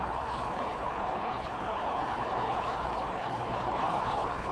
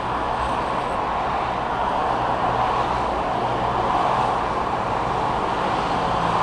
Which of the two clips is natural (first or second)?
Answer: second